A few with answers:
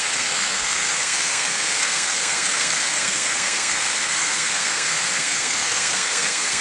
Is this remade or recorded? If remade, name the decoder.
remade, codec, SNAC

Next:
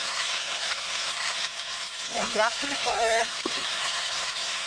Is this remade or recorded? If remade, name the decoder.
remade, codec, SNAC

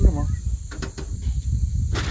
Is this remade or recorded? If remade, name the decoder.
recorded